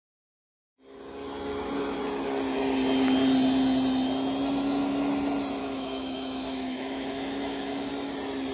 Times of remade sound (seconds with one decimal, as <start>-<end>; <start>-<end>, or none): 5.6-7.9

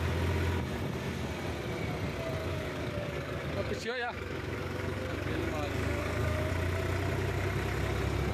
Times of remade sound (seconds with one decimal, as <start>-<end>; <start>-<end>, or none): 2.4-6.5

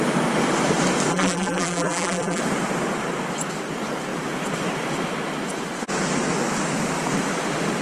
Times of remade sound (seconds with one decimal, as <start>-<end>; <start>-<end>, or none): 1.1-2.4

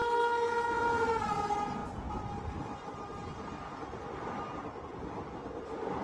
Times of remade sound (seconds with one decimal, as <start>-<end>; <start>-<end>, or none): 0.0-1.1